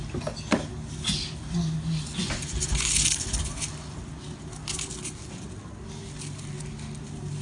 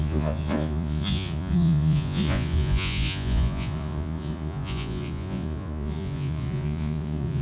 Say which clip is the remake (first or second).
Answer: second